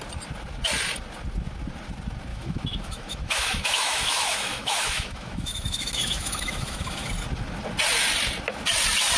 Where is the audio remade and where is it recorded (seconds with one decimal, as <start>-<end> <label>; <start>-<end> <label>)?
0.0-2.3 recorded; 2.3-7.1 remade; 7.1-9.2 recorded